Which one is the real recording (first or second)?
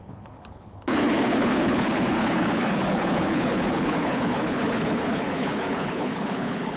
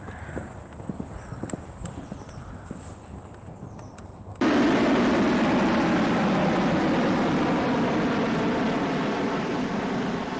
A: second